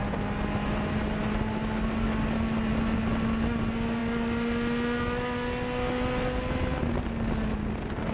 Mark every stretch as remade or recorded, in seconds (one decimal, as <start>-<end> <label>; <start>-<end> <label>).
0.0-8.1 recorded